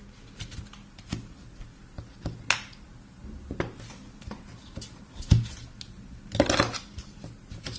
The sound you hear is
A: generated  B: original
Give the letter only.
B